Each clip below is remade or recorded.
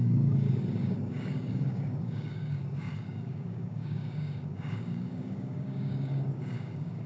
remade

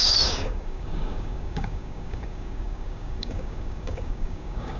remade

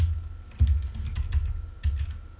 recorded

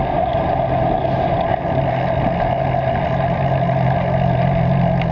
recorded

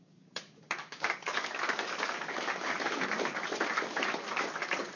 remade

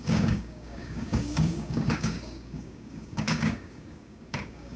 remade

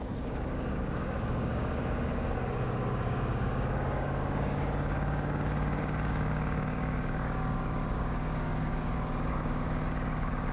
remade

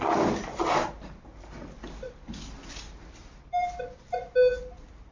recorded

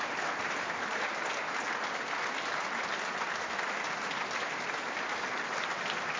recorded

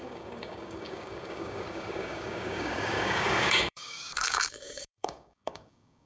remade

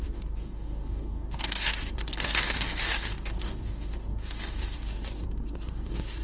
remade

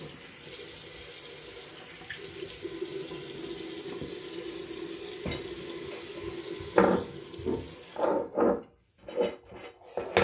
recorded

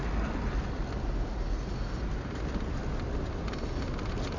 recorded